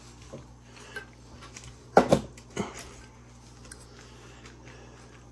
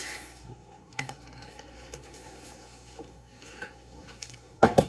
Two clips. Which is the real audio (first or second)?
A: first